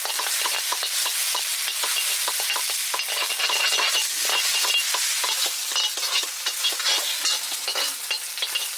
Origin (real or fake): real